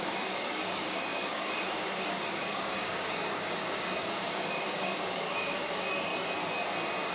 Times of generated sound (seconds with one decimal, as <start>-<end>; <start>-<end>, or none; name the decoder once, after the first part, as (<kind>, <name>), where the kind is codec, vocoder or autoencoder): 0.0-6.1 (codec, DAC)